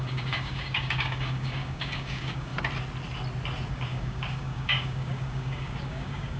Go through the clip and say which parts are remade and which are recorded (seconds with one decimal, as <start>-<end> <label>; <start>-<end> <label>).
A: 0.0-2.5 remade; 2.5-3.7 recorded; 3.7-6.4 remade